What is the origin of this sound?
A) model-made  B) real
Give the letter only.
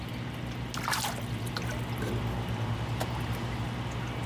B